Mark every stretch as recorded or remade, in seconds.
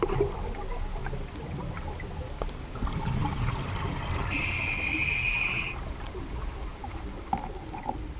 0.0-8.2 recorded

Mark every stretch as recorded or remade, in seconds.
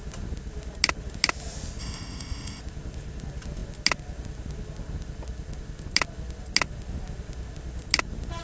0.0-1.8 recorded; 1.8-2.6 remade; 2.6-8.4 recorded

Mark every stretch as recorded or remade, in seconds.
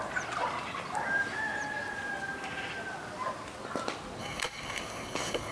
0.0-4.2 recorded; 4.2-5.5 remade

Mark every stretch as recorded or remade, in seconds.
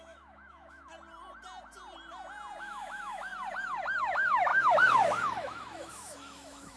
0.0-0.9 remade; 0.9-2.6 recorded; 2.6-3.3 remade; 3.3-4.0 recorded; 4.0-6.8 remade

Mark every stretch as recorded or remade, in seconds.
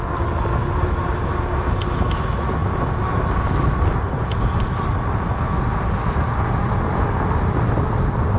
0.0-0.6 recorded; 0.6-1.3 remade; 1.3-8.4 recorded